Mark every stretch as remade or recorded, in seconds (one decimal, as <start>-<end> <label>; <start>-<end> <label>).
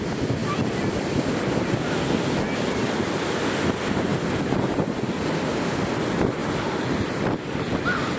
0.0-6.4 recorded; 6.4-7.6 remade; 7.6-8.2 recorded